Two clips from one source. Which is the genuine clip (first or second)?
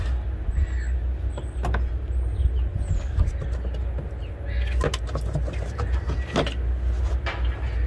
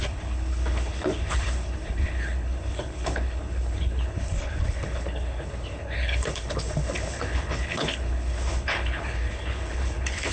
first